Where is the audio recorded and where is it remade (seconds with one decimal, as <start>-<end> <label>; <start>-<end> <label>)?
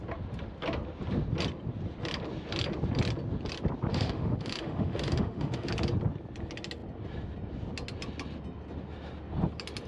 0.0-3.9 recorded; 3.9-5.7 remade; 5.7-9.9 recorded